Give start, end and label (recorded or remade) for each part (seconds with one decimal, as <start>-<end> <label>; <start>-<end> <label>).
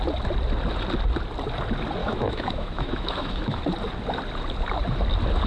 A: 0.0-2.0 recorded; 2.0-3.6 remade; 3.6-5.5 recorded